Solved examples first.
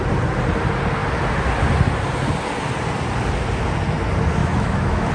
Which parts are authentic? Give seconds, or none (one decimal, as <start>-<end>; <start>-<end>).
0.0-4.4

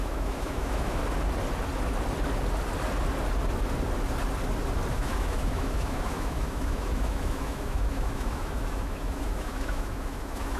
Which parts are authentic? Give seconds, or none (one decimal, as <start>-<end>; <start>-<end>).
1.0-4.9

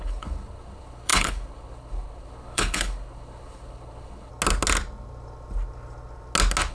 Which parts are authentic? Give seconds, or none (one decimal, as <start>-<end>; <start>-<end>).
4.3-6.7

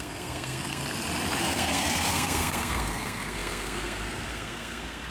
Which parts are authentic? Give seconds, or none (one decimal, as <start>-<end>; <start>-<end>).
0.8-1.4

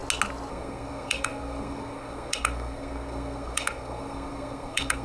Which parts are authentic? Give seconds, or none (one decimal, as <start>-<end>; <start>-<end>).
0.0-0.5

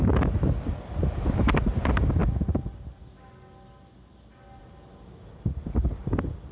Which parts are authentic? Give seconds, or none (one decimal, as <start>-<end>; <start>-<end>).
0.0-6.5

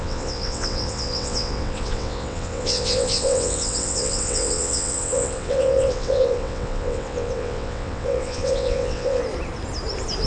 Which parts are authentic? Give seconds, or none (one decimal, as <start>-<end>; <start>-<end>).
9.2-10.3